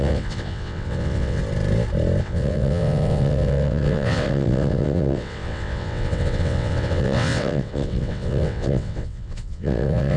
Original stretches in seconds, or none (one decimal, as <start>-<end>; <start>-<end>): 1.4-2.2